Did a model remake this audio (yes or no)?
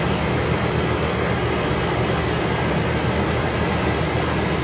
no